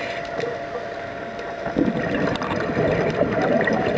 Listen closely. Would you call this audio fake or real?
real